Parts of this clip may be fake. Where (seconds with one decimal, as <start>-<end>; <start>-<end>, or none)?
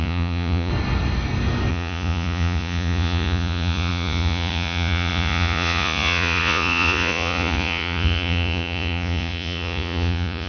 0.0-0.7; 1.7-10.5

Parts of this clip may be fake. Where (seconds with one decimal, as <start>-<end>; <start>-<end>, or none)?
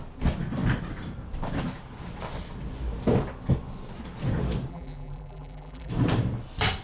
4.7-5.9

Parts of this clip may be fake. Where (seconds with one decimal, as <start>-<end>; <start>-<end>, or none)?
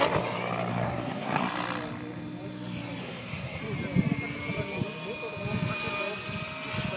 0.7-1.4; 3.0-3.6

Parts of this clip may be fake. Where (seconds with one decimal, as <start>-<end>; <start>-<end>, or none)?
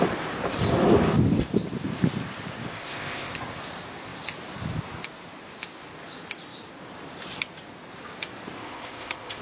2.7-3.3; 8.6-9.4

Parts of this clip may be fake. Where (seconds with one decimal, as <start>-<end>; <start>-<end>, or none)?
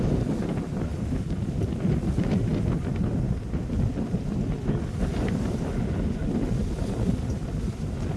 none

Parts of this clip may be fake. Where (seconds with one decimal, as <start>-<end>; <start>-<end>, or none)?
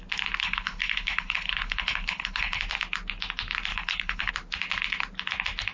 0.4-2.6; 3.7-4.3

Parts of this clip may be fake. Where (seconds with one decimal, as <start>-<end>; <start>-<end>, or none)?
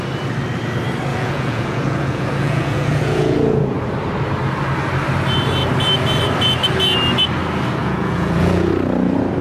1.1-3.7; 7.8-8.7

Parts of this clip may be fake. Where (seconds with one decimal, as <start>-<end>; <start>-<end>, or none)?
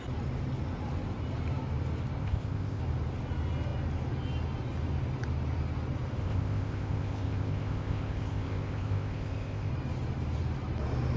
2.2-2.8; 6.2-9.7